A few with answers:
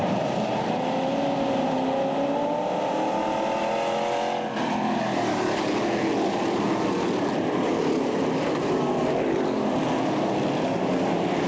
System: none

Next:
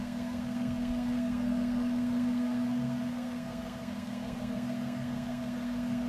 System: codec, SNAC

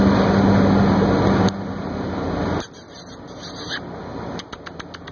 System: none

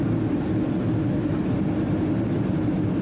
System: none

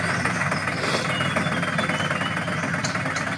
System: none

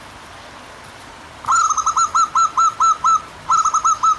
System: none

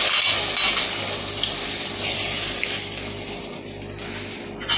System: none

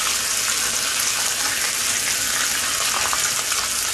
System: none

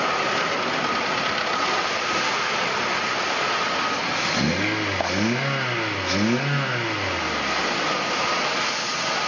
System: none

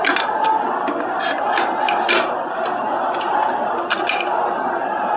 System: none